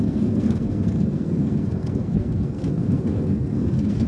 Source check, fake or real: fake